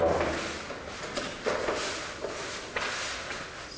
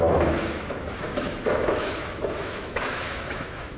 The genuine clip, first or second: first